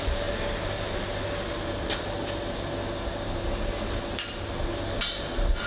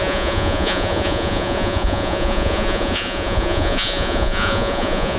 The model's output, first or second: second